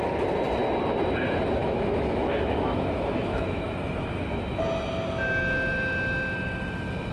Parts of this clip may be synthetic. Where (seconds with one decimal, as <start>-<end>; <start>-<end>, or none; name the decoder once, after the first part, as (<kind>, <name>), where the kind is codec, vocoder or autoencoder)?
1.6-4.1 (autoencoder, DAC-VAE)

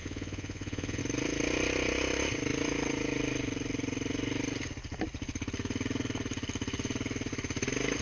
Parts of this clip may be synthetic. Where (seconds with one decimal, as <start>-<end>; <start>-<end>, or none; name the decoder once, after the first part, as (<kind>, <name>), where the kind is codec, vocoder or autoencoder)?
0.0-1.0 (vocoder, Vocos)

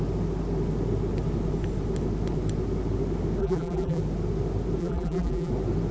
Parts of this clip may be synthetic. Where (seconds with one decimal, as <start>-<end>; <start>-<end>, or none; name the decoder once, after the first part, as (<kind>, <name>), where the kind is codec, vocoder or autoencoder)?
3.4-4.0 (vocoder, BigVGAN v2); 4.8-5.5

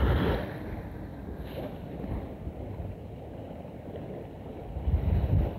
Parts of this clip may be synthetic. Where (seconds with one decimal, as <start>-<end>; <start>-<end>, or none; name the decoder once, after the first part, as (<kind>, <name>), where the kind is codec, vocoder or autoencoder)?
none

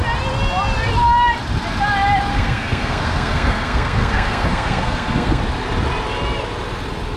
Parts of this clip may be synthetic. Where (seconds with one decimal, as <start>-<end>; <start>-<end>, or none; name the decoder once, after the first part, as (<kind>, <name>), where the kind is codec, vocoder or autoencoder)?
2.3-5.4 (codec, SNAC)

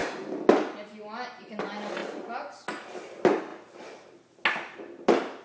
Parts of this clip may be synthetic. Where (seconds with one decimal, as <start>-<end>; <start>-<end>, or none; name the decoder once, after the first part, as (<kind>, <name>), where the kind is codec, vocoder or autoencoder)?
none